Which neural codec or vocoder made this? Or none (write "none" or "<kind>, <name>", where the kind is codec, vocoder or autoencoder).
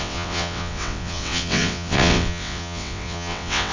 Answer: vocoder, WaveNeXt